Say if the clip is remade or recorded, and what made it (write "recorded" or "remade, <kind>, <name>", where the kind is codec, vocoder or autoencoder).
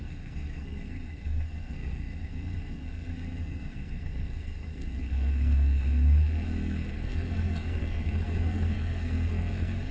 remade, codec, SNAC